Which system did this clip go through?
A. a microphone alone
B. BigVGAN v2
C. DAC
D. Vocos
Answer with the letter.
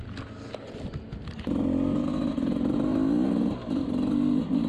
A